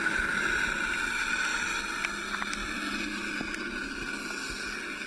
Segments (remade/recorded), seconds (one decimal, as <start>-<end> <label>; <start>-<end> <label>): 0.0-5.1 recorded